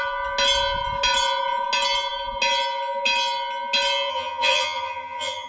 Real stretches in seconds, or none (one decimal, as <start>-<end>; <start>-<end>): 0.0-4.1